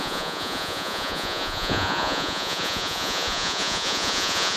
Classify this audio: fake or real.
fake